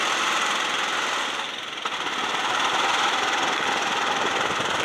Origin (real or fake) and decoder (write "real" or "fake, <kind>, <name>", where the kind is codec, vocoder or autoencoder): real